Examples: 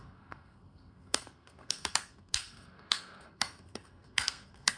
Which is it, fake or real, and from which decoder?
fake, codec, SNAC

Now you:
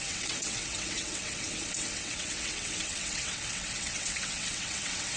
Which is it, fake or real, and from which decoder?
fake, vocoder, WaveNeXt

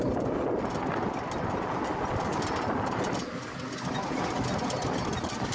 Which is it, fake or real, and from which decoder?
real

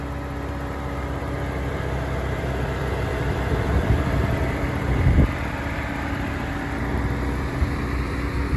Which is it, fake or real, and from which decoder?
fake, vocoder, BigVGAN v2